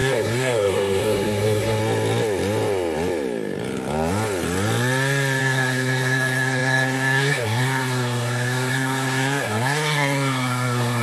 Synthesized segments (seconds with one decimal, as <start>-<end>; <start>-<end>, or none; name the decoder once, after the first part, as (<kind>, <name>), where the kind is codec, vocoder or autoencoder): 0.0-1.8 (codec, SNAC); 5.4-11.0